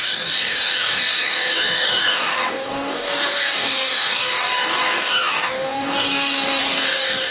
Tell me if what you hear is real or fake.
fake